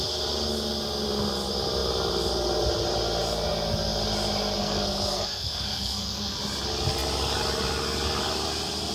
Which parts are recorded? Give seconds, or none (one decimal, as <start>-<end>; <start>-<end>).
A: 0.0-4.6; 6.4-8.9